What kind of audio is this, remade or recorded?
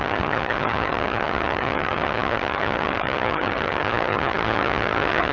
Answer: remade